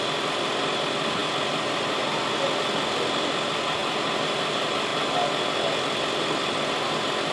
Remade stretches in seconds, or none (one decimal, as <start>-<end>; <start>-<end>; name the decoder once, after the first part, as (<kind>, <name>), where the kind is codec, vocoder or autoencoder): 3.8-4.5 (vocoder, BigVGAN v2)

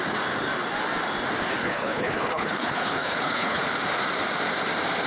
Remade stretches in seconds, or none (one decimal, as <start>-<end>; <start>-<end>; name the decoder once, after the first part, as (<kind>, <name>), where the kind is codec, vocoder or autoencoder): 1.6-3.6 (codec, HILCodec)

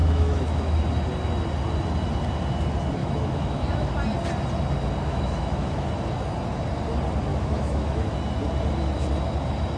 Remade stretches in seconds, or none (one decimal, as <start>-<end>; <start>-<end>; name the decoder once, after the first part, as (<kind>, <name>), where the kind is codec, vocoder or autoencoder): 0.0-0.8 (autoencoder, DAC-VAE); 3.0-3.9; 5.1-5.9; 7.3-8.1

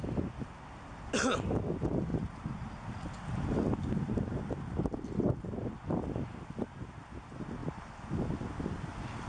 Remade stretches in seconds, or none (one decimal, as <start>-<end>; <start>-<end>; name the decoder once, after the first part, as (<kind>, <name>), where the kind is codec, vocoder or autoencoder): none